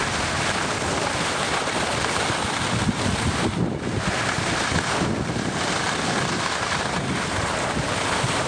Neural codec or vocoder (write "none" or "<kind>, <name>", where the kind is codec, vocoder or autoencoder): none